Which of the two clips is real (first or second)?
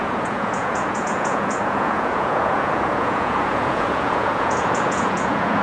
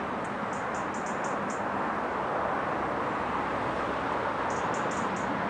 second